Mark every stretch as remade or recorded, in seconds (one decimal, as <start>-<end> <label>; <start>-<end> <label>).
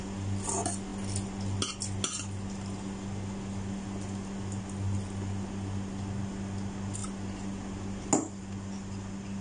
0.0-9.4 recorded